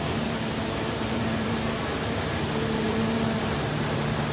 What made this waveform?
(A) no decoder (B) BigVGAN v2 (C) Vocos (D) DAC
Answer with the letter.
B